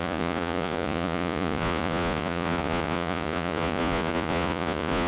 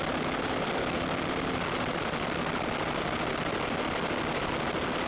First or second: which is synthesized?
first